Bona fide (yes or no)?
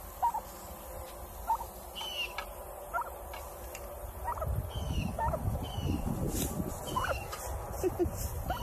yes